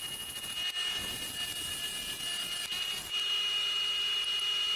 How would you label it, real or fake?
real